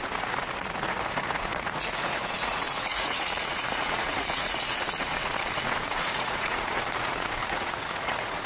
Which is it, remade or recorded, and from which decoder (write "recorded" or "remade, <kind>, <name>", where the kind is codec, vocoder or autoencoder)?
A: remade, vocoder, Vocos